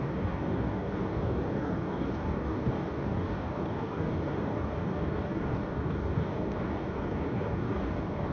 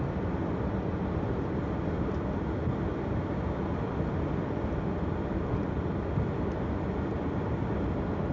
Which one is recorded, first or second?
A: second